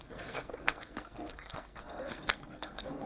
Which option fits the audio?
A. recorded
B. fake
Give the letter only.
B